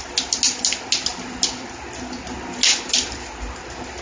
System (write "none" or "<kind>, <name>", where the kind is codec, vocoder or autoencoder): none